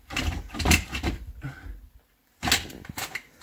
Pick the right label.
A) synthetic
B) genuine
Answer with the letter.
B